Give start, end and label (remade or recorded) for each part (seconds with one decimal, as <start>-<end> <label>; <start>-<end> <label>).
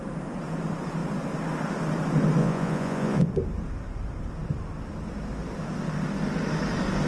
0.0-2.4 recorded; 2.4-3.3 remade; 3.3-7.1 recorded